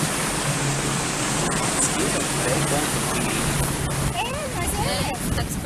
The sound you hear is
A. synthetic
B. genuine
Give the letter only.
A